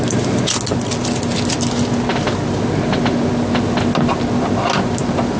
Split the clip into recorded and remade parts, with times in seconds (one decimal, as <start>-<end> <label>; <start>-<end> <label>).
0.0-5.4 recorded